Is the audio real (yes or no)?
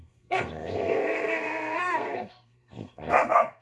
no